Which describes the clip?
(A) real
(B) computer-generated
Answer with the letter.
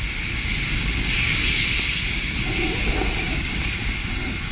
B